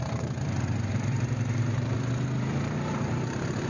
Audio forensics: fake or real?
fake